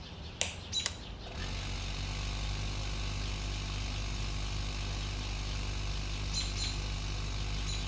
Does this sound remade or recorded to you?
recorded